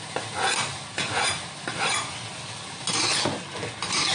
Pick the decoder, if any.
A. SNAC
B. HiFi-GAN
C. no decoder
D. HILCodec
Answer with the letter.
C